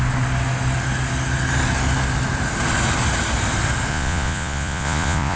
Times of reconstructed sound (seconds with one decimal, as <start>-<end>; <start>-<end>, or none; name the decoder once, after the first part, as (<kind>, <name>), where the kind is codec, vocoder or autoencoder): 3.9-5.4 (vocoder, Vocos)